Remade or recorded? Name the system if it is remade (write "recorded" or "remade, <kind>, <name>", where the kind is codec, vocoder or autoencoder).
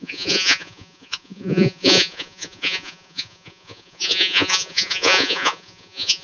remade, vocoder, Vocos